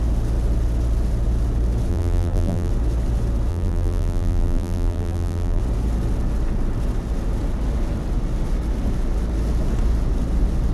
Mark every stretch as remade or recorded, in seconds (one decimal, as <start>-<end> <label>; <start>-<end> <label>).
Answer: 0.0-1.9 recorded; 1.9-2.7 remade; 2.7-3.5 recorded; 3.5-5.6 remade; 5.6-10.7 recorded